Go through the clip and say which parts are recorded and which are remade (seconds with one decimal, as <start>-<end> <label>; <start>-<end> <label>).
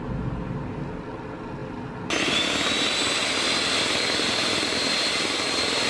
0.0-5.9 recorded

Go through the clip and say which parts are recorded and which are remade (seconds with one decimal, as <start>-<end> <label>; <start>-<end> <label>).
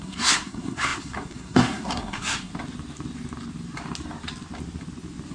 0.0-2.5 remade; 2.5-5.3 recorded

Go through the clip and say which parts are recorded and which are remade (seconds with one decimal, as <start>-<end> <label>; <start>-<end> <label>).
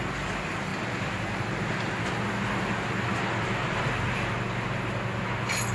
0.0-5.7 recorded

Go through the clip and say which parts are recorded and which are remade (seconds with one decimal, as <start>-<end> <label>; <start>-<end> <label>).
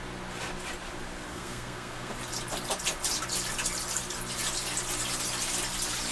0.0-1.3 recorded; 1.3-2.1 remade; 2.1-6.1 recorded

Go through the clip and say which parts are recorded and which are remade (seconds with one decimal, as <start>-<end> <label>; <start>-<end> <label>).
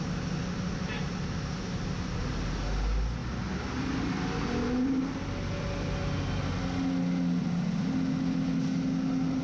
0.0-9.4 recorded